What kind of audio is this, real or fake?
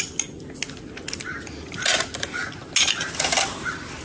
real